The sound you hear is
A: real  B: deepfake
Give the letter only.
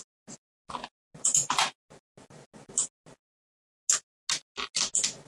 A